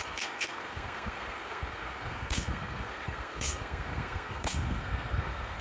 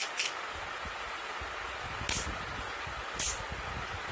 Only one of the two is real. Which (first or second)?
second